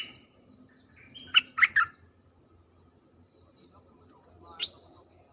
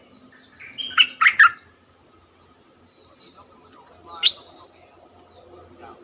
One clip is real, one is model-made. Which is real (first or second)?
second